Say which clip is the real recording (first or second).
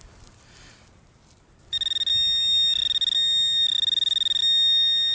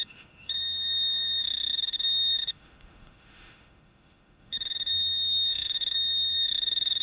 first